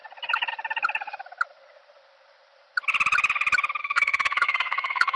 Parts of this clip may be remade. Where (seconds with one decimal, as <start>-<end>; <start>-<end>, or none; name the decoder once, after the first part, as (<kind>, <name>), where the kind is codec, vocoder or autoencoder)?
3.8-5.2 (codec, SNAC)